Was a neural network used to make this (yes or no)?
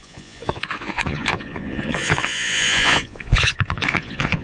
yes